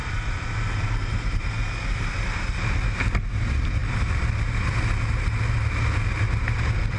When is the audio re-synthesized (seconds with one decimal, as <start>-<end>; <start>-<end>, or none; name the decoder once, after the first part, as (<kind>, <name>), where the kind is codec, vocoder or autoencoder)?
none

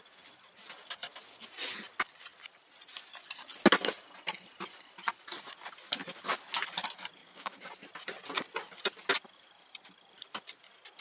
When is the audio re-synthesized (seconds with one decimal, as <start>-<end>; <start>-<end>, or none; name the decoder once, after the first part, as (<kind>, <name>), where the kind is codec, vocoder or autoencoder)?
7.2-7.7 (codec, DAC)

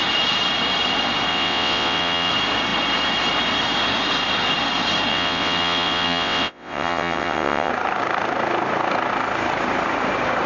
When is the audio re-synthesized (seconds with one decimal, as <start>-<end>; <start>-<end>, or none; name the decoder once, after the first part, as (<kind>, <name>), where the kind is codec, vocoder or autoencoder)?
1.3-2.3 (vocoder, WaveNeXt); 5.1-7.7

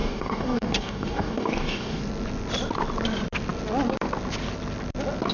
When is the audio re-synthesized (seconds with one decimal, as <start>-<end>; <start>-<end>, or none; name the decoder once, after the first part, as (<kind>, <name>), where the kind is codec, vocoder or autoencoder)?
0.0-2.0 (codec, DAC)

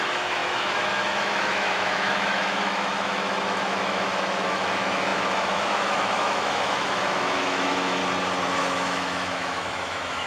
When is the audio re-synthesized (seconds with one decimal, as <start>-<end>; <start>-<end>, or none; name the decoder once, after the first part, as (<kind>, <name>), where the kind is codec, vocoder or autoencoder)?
0.0-8.0 (autoencoder, DAC-VAE); 8.6-10.3

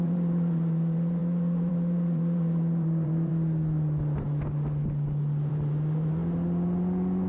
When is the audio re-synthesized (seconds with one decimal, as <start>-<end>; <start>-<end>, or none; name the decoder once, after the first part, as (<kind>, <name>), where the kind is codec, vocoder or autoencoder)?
0.0-3.3 (vocoder, BigVGAN v2); 5.5-6.2